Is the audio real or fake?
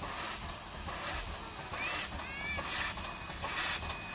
real